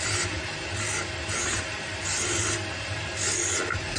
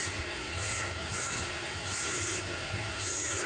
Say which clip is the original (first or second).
first